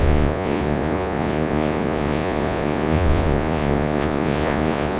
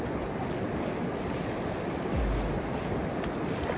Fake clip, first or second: first